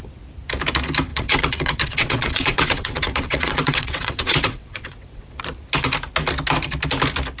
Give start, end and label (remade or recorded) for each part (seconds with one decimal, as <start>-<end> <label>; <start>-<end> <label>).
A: 0.0-1.1 recorded; 1.1-5.4 remade; 5.4-7.4 recorded